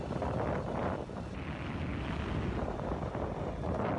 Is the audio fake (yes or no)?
no